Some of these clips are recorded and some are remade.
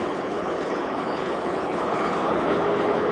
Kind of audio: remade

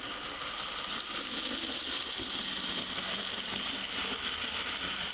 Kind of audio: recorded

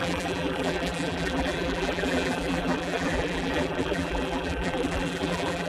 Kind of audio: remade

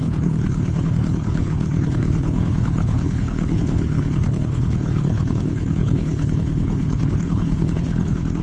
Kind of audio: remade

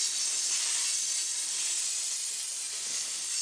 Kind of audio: recorded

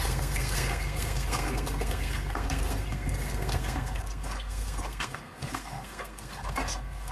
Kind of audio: remade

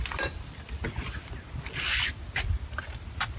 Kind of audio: recorded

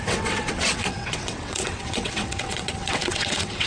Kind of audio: remade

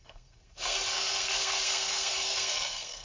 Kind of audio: remade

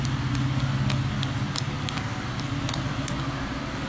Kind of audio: recorded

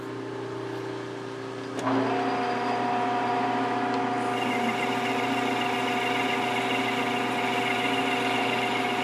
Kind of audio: recorded